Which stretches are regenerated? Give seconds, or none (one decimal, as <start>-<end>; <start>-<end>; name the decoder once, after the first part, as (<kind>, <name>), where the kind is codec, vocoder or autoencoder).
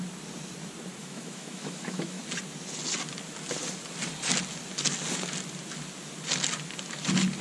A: 1.0-2.2 (autoencoder, DAC-VAE)